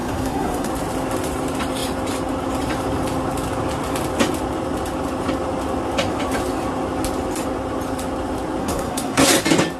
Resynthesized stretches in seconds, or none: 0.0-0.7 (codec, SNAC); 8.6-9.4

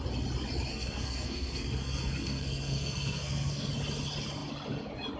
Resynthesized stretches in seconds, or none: 0.7-3.7 (codec, SNAC)

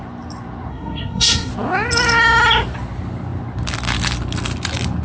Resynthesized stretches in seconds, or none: 0.7-1.5 (codec, SNAC)

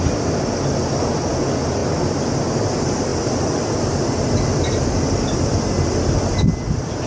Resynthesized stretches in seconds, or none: none

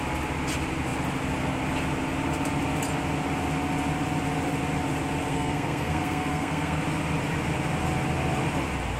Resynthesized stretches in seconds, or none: 5.3-6.8 (codec, SNAC)

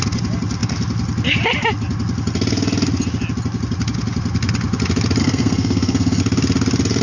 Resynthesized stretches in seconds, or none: 5.2-6.2 (codec, SNAC)

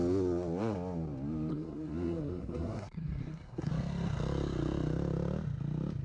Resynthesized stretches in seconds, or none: 1.5-3.7 (codec, SNAC)